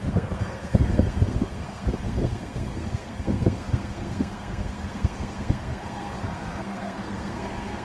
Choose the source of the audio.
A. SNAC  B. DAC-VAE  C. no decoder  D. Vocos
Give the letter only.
A